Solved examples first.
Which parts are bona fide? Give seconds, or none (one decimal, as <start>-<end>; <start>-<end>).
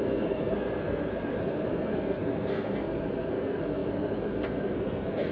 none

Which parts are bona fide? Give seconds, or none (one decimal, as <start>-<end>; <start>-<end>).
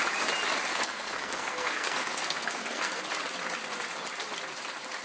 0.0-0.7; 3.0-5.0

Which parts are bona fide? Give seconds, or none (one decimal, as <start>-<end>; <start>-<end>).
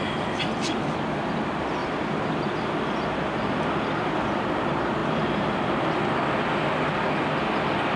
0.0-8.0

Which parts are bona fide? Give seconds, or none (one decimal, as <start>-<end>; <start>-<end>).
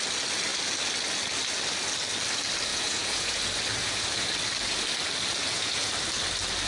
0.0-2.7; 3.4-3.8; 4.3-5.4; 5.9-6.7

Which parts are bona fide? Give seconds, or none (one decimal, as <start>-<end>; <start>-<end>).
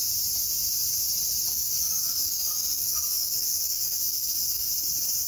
0.0-1.5; 4.7-5.3